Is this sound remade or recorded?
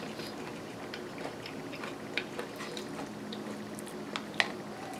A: recorded